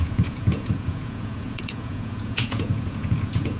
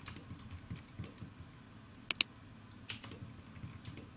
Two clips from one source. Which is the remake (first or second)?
first